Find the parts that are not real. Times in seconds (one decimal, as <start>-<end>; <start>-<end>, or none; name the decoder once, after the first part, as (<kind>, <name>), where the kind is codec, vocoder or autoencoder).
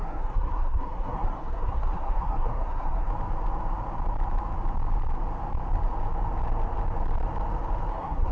0.0-3.1 (codec, SNAC); 7.9-8.3